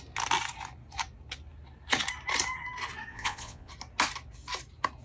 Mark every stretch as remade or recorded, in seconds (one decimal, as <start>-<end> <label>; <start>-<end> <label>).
0.0-3.1 recorded; 3.1-3.7 remade; 3.7-5.0 recorded